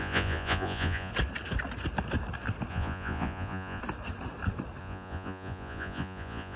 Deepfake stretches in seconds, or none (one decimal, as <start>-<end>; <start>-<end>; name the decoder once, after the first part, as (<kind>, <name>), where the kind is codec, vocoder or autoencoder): 0.0-1.1 (vocoder, Vocos); 2.7-3.8; 4.8-6.6